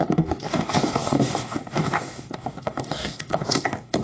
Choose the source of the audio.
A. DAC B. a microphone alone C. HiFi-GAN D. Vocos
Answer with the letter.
A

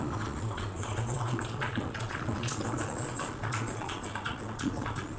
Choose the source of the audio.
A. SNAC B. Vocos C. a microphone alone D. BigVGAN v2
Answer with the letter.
B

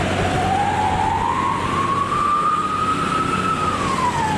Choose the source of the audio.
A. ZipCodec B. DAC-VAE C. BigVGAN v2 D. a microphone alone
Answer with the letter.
D